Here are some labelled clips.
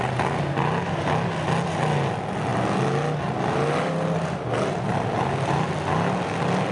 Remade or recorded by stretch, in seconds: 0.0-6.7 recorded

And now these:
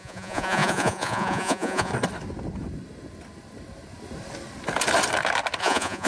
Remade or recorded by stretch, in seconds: 0.0-1.9 remade; 1.9-5.6 recorded; 5.6-6.1 remade

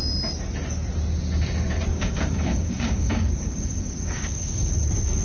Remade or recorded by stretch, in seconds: 0.0-1.9 recorded; 1.9-4.7 remade; 4.7-5.2 recorded

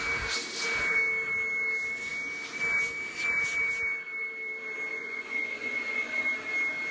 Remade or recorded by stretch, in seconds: 0.0-4.9 recorded; 4.9-6.2 remade; 6.2-6.9 recorded